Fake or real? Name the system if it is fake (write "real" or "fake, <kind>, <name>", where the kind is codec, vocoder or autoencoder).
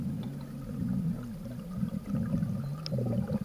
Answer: real